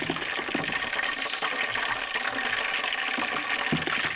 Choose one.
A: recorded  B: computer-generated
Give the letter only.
A